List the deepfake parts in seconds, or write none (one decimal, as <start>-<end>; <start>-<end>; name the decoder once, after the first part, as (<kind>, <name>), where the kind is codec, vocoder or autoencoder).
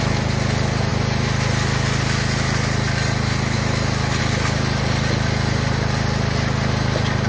none